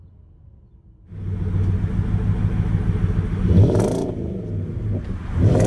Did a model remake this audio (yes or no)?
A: no